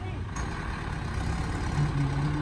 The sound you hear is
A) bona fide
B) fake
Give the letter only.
A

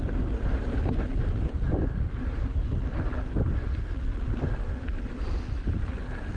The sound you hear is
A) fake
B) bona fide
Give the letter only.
A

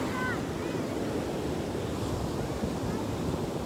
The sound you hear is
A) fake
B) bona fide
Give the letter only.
B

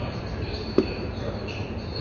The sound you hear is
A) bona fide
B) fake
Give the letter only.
B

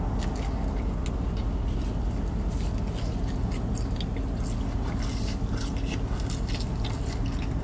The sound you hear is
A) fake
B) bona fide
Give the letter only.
B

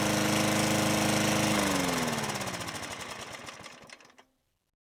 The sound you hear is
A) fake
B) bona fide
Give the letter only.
B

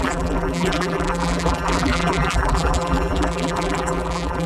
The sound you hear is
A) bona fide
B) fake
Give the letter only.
B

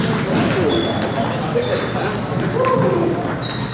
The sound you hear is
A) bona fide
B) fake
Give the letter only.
A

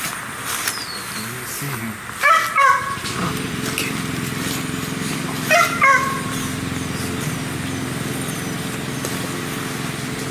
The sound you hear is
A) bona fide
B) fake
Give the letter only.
A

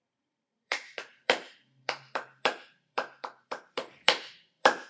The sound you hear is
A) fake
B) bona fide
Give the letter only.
A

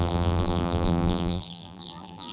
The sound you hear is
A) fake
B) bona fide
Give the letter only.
A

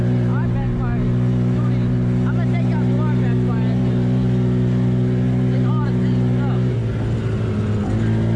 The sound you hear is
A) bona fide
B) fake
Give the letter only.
A